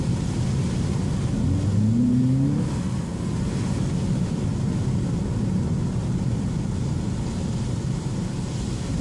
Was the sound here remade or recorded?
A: recorded